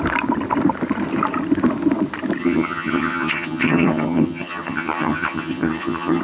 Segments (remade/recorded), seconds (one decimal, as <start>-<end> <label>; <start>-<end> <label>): 0.0-2.4 recorded; 2.4-6.2 remade